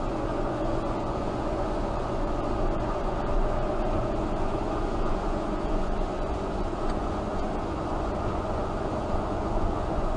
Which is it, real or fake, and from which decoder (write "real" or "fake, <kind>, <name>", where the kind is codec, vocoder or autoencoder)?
fake, vocoder, Vocos